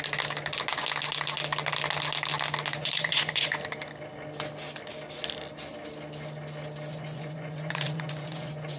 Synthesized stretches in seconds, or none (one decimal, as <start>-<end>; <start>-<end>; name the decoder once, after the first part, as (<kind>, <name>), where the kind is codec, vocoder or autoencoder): 2.7-3.6 (vocoder, Vocos); 6.9-8.8